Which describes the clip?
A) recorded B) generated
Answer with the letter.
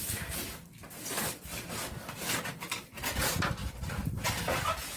A